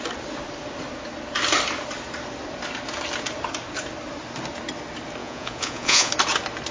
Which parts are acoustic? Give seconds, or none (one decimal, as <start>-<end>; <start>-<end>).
0.0-5.2; 6.1-6.7